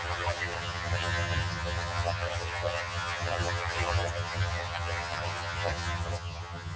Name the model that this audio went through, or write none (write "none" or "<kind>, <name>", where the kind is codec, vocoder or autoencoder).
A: vocoder, HiFi-GAN